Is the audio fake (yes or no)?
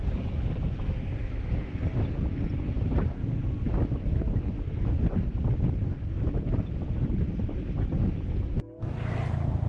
no